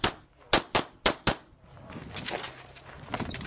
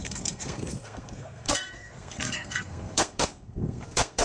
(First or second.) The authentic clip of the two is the first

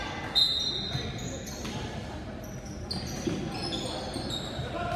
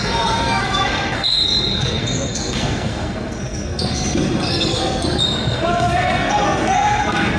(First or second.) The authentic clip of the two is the first